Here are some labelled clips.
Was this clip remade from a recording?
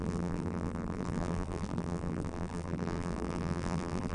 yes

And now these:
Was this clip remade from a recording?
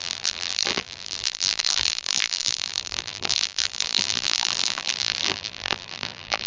yes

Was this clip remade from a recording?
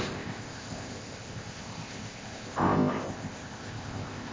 yes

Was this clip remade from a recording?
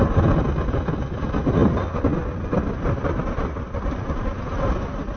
no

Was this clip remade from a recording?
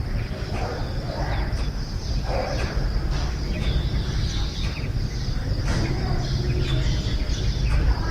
no